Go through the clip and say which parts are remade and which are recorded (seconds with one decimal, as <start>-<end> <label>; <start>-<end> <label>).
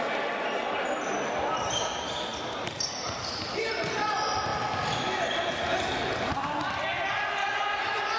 0.0-8.2 recorded